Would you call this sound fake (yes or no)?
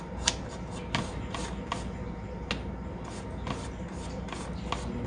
no